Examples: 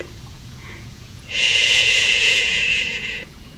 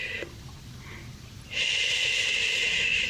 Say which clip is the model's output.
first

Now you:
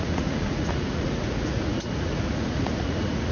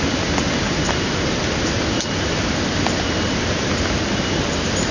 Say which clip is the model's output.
first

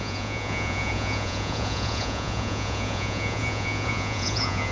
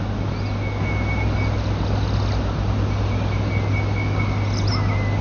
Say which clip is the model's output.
first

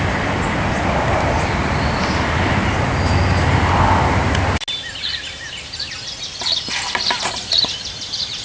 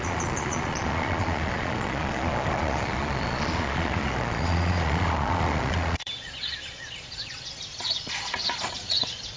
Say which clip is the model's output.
second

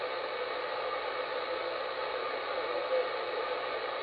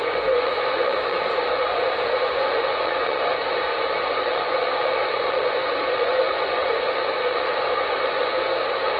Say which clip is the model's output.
second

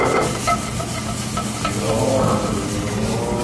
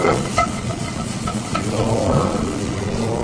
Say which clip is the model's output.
second